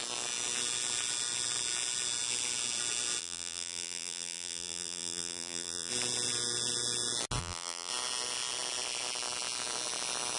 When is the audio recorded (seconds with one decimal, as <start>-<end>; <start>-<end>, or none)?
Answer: 0.0-3.2; 5.9-7.4; 7.9-10.4